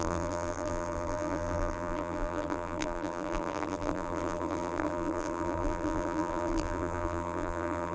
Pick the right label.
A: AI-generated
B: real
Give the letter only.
A